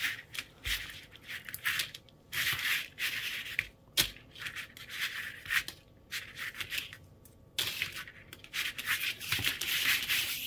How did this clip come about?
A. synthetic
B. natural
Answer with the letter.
B